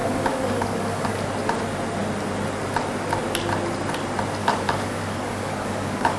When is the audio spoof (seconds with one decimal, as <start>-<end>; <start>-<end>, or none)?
0.0-1.2; 4.4-6.2